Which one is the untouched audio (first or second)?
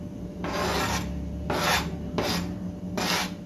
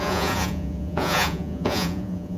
first